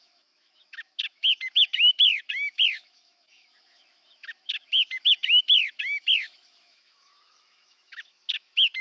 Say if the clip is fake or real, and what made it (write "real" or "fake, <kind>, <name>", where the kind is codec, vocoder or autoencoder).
fake, autoencoder, DAC-VAE